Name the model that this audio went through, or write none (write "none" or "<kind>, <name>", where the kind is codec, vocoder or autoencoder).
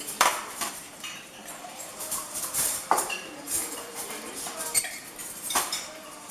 vocoder, BigVGAN v2